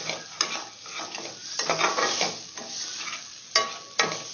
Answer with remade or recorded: recorded